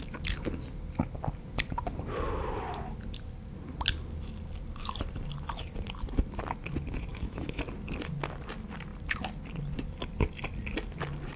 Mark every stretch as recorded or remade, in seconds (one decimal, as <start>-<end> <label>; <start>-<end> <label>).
0.0-7.1 recorded; 7.1-7.6 remade; 7.6-11.4 recorded